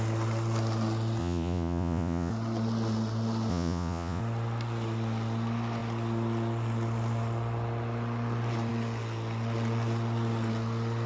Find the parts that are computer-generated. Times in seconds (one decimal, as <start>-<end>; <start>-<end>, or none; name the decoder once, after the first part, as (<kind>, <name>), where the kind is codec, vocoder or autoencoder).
1.2-2.3 (vocoder, Vocos); 3.5-4.2